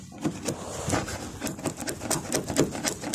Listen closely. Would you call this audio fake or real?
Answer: real